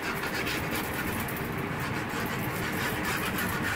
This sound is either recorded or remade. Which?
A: recorded